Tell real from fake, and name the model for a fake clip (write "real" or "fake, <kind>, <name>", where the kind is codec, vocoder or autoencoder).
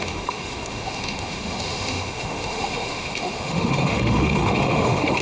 fake, autoencoder, DAC-VAE